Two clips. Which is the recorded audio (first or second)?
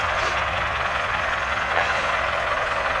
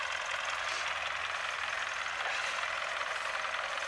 second